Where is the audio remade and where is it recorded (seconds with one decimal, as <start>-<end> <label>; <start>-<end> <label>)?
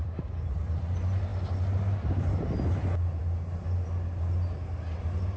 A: 0.0-0.6 remade; 0.6-5.4 recorded